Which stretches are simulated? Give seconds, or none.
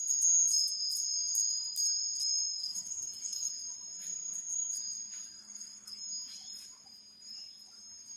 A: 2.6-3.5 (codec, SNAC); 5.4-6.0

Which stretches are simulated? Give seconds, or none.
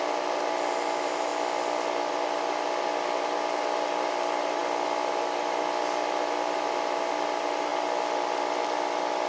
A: none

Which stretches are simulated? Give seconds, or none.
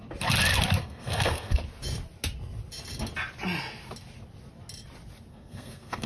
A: 0.8-1.6 (codec, SNAC); 5.3-6.1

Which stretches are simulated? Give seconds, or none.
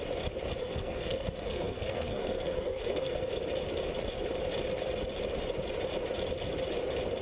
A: 0.6-3.3 (codec, SNAC)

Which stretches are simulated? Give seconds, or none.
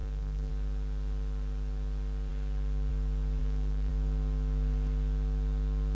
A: 0.0-0.5 (codec, SNAC); 3.4-3.9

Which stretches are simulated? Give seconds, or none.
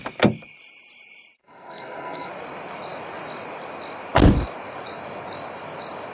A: 1.4-2.3 (codec, SNAC)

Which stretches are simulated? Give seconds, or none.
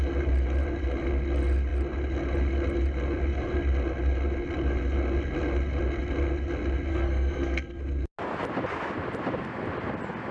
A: 6.9-7.8 (codec, SNAC)